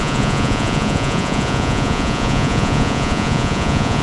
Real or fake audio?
fake